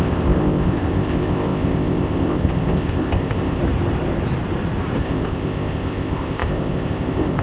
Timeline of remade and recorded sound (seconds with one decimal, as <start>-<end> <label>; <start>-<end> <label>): 0.0-3.6 remade; 3.6-5.0 recorded; 5.0-7.4 remade